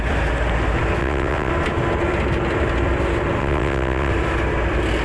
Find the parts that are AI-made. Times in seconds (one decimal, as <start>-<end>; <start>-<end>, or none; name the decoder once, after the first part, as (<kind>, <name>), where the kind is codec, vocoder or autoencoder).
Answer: 1.0-1.5 (vocoder, WaveNeXt); 3.4-4.1